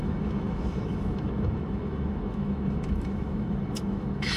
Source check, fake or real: fake